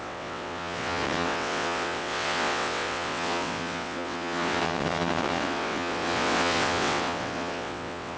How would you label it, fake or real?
fake